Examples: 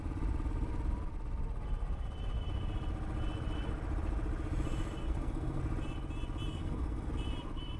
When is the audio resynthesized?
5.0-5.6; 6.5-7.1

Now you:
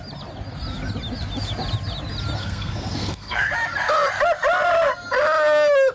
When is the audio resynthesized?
2.4-3.5